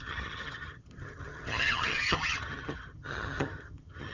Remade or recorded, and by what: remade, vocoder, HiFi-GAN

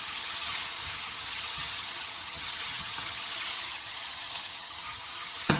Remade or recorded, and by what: remade, vocoder, HiFi-GAN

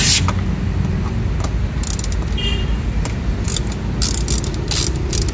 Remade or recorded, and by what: recorded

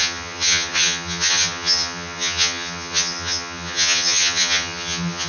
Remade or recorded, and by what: remade, vocoder, HiFi-GAN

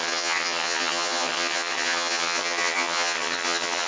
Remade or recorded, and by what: remade, vocoder, HiFi-GAN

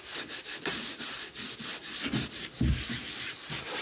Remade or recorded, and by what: recorded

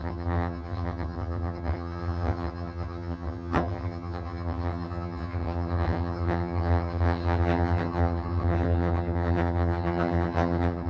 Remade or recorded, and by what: remade, vocoder, HiFi-GAN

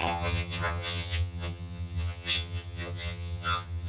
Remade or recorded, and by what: remade, vocoder, HiFi-GAN